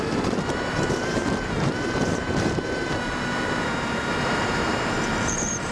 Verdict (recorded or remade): remade